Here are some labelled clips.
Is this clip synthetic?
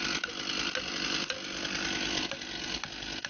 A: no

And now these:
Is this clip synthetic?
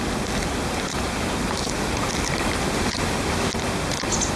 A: no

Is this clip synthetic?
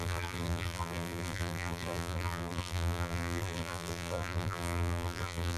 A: yes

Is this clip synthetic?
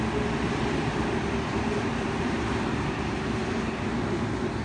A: no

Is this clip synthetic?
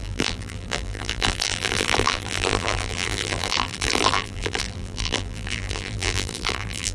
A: yes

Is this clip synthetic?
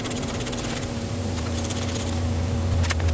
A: no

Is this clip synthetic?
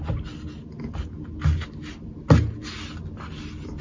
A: no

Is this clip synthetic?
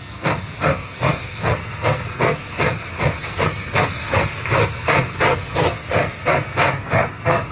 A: yes